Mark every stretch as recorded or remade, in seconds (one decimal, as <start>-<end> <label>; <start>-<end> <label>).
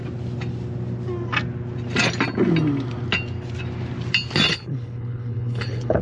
0.0-4.5 recorded; 4.5-6.0 remade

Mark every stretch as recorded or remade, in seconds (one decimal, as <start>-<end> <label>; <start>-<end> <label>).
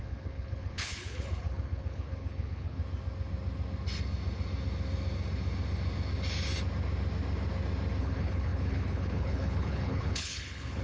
0.0-2.8 remade; 2.8-8.0 recorded; 8.0-10.8 remade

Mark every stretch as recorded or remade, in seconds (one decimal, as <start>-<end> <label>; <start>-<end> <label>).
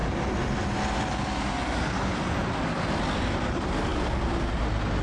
0.0-5.0 recorded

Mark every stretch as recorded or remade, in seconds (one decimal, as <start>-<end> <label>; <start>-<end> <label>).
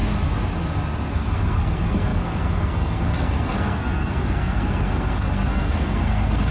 0.0-1.1 recorded; 1.1-6.5 remade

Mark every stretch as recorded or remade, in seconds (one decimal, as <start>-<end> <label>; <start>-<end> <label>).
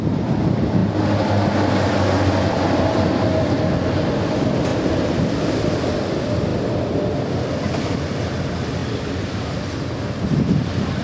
0.0-4.7 recorded; 4.7-5.2 remade; 5.2-8.8 recorded; 8.8-9.9 remade; 9.9-11.0 recorded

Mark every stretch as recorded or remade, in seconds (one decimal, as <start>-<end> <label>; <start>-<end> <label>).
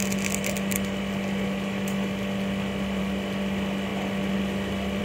0.0-5.0 recorded